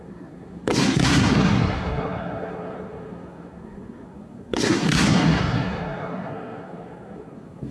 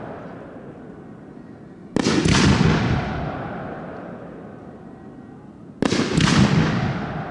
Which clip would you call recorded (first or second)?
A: second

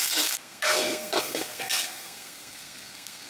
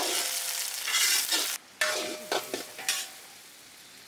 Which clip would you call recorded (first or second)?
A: second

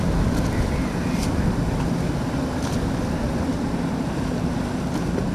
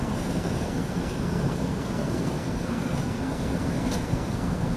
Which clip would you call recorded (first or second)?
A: first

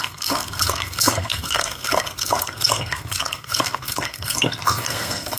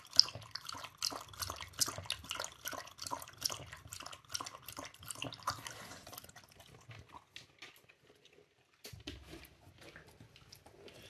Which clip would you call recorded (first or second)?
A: second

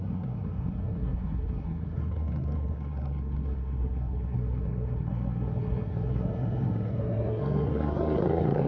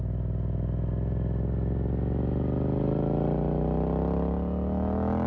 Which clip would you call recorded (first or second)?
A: second